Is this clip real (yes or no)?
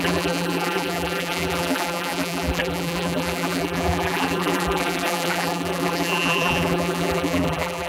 no